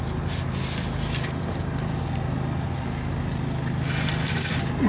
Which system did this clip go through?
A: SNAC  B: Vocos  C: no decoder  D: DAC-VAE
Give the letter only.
C